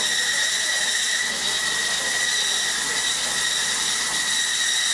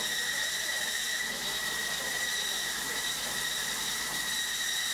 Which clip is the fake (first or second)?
second